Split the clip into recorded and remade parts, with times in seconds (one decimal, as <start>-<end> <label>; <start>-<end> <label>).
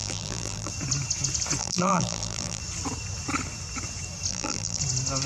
0.0-0.7 remade; 0.7-1.6 recorded; 1.6-2.6 remade; 2.6-4.3 recorded; 4.3-4.8 remade; 4.8-5.3 recorded